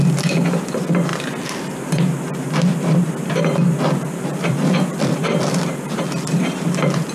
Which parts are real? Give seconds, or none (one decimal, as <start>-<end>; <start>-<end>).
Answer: 0.0-4.3; 5.6-7.1